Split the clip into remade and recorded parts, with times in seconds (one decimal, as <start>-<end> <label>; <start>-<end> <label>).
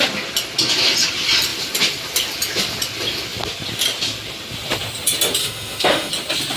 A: 0.0-5.4 recorded; 5.4-6.1 remade; 6.1-6.6 recorded